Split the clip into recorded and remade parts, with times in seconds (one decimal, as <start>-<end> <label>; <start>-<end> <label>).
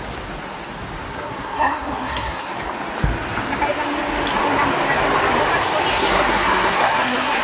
0.0-1.1 recorded; 1.1-2.5 remade; 2.5-5.9 recorded; 5.9-7.4 remade